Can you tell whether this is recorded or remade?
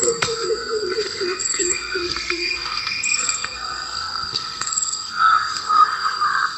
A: remade